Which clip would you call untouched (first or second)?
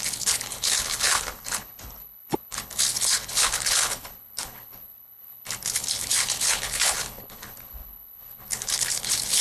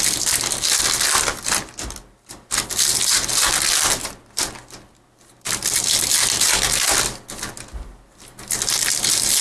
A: second